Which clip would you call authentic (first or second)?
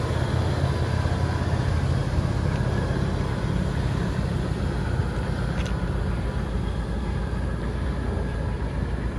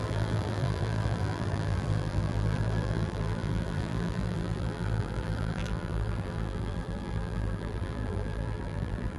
first